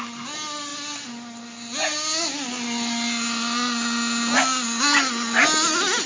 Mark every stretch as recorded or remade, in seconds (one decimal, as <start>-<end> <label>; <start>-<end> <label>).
0.0-6.1 recorded